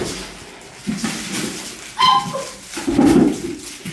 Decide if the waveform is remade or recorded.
recorded